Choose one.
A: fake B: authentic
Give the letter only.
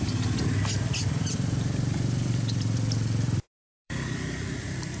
A